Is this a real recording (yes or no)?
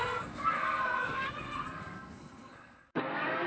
no